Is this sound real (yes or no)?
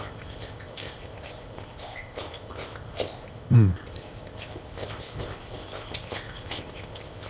no